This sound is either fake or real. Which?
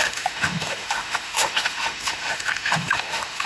fake